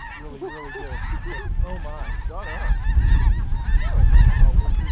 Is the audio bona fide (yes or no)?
yes